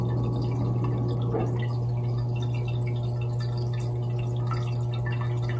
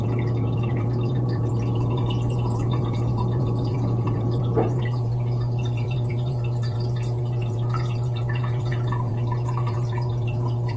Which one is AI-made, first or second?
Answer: second